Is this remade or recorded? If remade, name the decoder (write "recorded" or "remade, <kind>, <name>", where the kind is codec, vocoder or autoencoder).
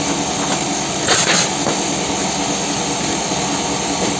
recorded